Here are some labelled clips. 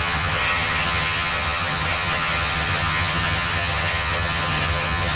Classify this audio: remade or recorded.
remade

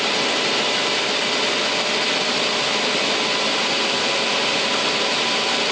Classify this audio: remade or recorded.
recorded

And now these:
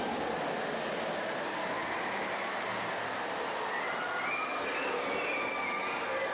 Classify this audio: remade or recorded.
recorded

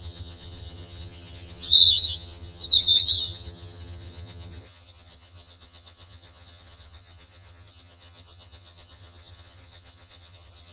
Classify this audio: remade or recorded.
remade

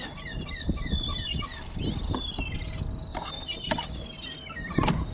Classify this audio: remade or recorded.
recorded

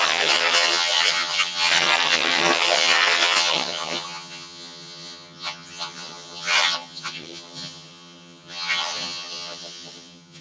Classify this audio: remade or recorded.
remade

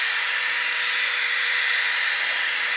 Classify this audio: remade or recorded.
recorded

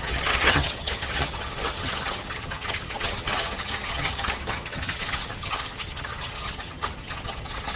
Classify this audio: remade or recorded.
remade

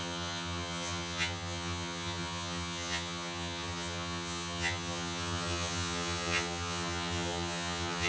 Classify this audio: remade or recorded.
remade